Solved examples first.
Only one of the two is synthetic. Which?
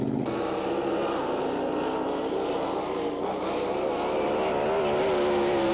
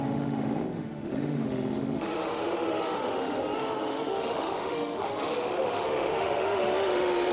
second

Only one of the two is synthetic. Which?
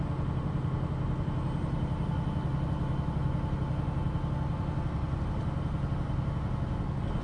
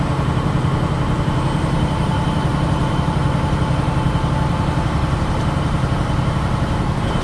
second